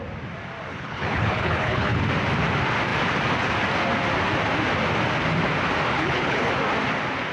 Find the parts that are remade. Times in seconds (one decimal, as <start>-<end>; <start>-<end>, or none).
0.7-2.0; 5.9-6.5